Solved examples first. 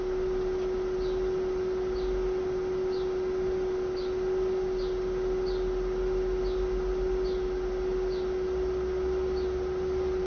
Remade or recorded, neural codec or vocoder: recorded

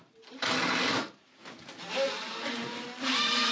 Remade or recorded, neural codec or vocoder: remade, vocoder, BigVGAN v2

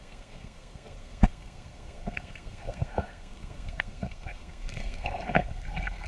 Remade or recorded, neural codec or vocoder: remade, codec, SNAC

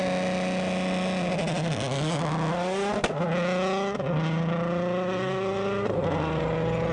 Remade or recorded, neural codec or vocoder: recorded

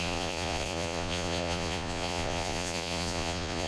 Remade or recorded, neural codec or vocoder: remade, vocoder, Vocos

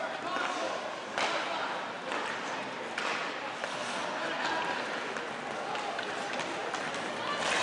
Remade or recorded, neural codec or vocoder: recorded